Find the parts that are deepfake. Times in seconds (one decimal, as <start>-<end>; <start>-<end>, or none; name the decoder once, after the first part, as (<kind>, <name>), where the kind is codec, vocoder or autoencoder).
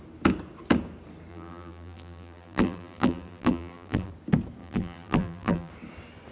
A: 1.3-4.1 (vocoder, BigVGAN v2); 4.6-5.7